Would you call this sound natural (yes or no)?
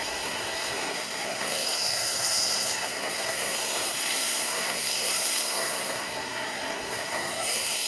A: no